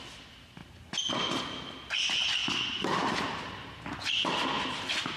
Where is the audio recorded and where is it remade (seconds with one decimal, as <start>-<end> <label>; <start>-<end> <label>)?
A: 0.0-5.2 recorded

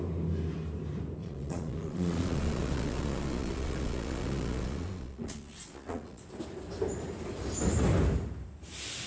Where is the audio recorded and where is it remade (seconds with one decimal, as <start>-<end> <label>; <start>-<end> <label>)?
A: 0.0-1.2 recorded; 1.2-6.2 remade; 6.2-9.1 recorded

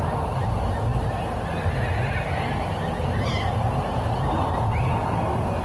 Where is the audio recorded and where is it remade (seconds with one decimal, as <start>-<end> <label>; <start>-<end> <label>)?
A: 0.0-5.6 recorded

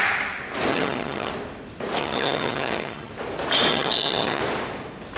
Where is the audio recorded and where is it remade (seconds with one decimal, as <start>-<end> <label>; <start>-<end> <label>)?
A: 0.0-0.7 recorded; 0.7-1.3 remade; 1.3-2.0 recorded; 2.0-3.1 remade; 3.1-3.7 recorded; 3.7-4.4 remade; 4.4-5.2 recorded